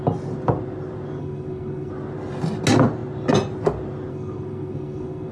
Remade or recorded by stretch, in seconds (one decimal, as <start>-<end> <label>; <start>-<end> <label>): 0.0-1.2 recorded; 1.2-1.9 remade; 1.9-4.1 recorded; 4.1-5.3 remade